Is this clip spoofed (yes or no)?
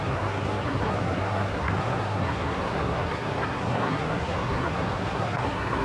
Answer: yes